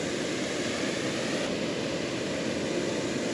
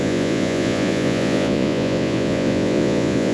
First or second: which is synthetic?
second